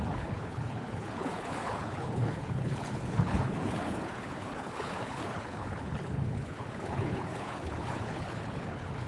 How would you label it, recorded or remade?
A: remade